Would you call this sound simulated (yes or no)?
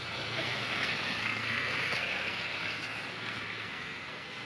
yes